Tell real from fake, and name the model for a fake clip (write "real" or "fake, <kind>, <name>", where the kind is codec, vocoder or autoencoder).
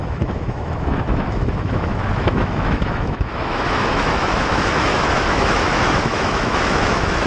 fake, autoencoder, DAC-VAE